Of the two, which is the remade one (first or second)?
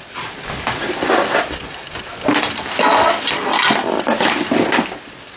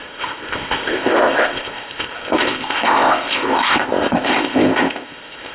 second